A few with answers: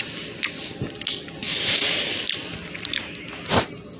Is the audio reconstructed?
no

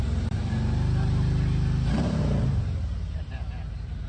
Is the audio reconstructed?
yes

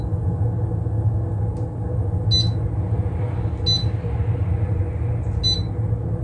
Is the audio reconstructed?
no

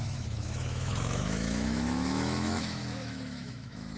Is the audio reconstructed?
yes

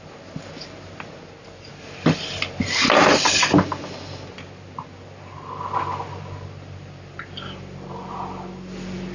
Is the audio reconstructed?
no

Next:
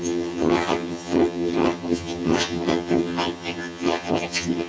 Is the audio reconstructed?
yes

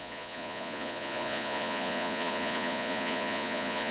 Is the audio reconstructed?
yes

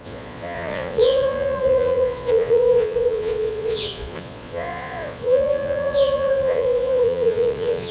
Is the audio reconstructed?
yes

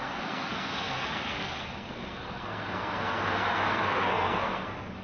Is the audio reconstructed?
yes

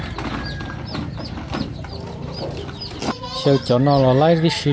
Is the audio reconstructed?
no